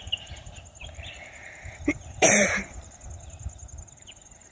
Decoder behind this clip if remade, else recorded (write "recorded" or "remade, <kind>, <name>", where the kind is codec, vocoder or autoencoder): remade, vocoder, BigVGAN v2